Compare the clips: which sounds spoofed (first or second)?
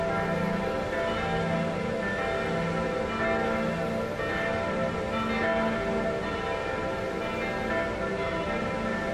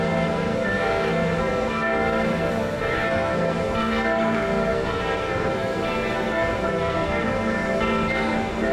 second